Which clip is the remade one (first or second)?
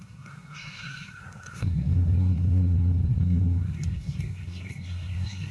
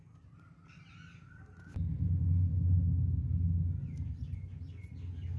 first